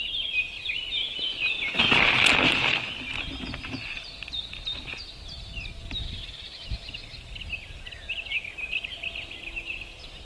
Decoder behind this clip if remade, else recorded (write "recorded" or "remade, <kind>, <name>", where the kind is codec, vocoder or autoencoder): recorded